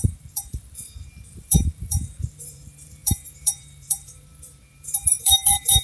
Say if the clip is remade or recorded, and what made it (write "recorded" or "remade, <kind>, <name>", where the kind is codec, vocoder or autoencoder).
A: remade, vocoder, BigVGAN v2